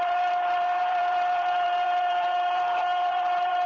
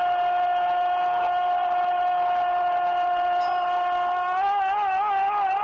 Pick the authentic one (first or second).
second